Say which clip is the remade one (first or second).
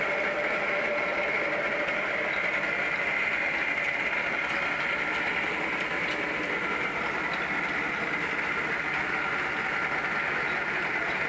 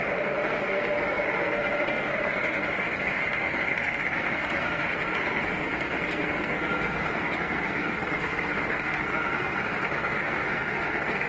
second